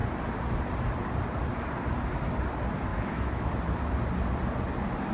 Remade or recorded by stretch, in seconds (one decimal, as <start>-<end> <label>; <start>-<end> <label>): 0.0-2.9 recorded; 2.9-3.5 remade; 3.5-5.1 recorded